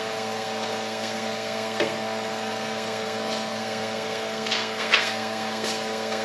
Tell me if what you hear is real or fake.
fake